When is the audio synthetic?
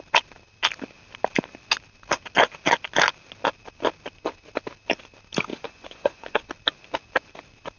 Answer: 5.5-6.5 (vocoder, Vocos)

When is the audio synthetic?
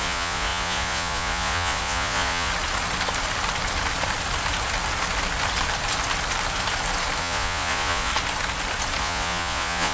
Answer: 0.0-2.5 (vocoder, Vocos); 7.2-8.1; 9.0-9.9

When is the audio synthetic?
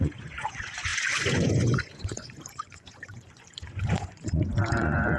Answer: 0.0-5.2 (vocoder, Vocos)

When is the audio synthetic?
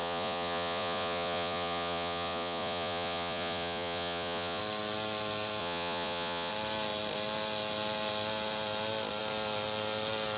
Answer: 0.0-4.6 (vocoder, Vocos); 5.6-6.5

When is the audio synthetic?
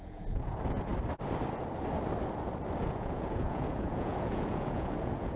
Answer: 0.0-0.9 (vocoder, Vocos); 2.8-5.4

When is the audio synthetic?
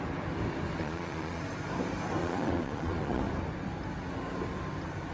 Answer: 0.8-1.4 (vocoder, Vocos); 2.2-3.2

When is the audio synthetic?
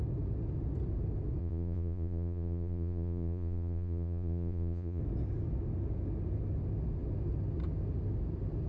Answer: 1.4-5.0 (vocoder, Vocos)